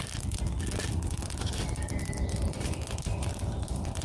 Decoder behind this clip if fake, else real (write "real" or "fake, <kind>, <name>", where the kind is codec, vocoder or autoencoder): real